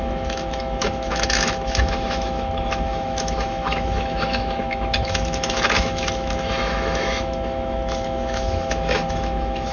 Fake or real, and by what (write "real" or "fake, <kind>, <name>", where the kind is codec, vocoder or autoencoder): fake, autoencoder, DAC-VAE